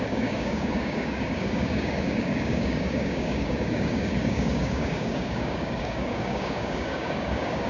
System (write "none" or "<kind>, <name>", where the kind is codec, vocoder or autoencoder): codec, DAC